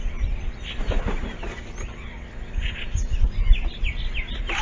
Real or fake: real